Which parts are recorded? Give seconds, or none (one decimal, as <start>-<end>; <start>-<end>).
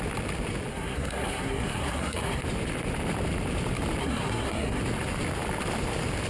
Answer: 0.0-0.7; 2.4-4.0; 4.8-6.3